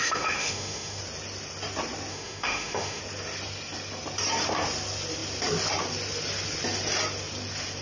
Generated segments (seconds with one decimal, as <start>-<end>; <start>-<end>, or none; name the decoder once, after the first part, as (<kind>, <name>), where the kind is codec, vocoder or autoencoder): 0.0-1.0 (autoencoder, DAC-VAE); 2.1-3.0